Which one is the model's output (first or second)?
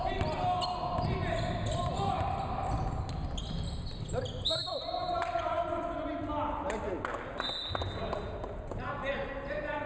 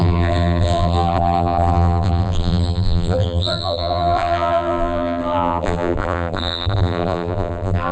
second